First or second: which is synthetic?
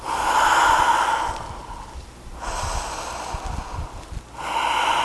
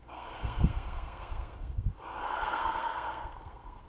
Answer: second